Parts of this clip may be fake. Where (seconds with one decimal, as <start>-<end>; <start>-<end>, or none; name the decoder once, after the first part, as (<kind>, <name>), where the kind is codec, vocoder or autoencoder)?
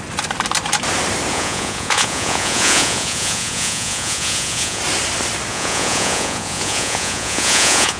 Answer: 1.3-4.8 (vocoder, Vocos); 5.5-8.0